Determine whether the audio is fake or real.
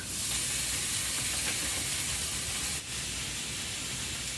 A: real